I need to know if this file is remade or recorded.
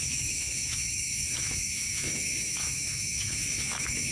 remade